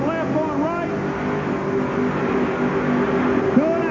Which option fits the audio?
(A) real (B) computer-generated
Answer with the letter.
A